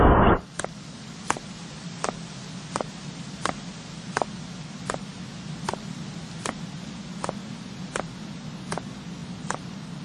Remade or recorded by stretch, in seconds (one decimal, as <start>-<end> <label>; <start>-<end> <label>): 0.0-10.0 recorded